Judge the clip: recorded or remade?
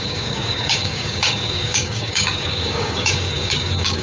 remade